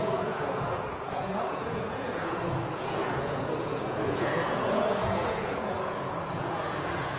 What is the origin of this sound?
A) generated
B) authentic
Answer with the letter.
A